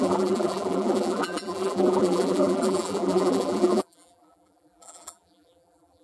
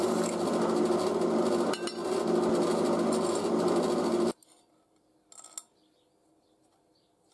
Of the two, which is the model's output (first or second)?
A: first